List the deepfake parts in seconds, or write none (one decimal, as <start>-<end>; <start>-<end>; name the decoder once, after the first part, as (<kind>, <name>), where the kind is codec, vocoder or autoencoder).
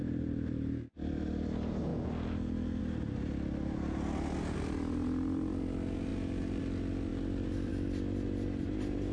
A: none